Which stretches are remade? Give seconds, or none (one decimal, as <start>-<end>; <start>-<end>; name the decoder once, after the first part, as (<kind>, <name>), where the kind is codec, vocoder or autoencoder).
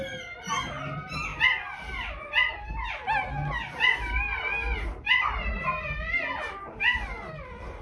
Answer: none